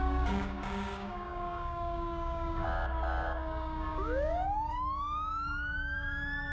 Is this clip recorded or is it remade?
remade